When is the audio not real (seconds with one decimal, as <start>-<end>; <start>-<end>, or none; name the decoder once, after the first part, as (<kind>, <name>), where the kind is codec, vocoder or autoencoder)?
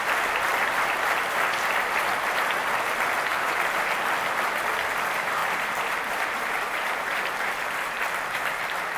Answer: 3.3-3.9 (vocoder, BigVGAN v2); 5.4-8.6